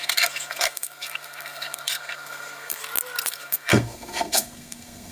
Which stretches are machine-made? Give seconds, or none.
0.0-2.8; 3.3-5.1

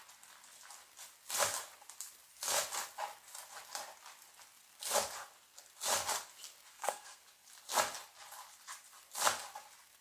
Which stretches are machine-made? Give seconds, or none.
6.7-7.2

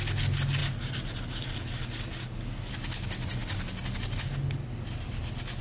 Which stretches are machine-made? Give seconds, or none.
none

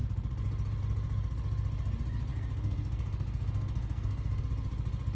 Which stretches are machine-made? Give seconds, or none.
2.3-4.4

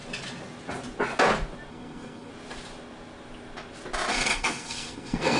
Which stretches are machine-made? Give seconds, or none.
1.7-2.3; 4.1-5.4

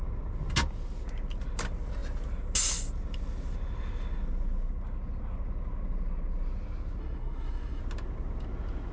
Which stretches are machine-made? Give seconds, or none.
7.0-7.8